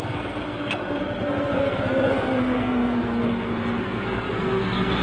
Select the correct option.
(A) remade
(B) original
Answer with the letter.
A